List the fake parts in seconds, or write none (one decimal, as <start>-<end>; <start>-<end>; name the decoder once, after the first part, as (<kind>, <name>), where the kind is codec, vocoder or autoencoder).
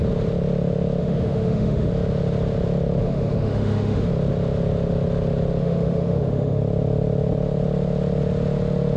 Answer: 1.0-1.9 (autoencoder, DAC-VAE); 3.0-4.1; 5.6-6.6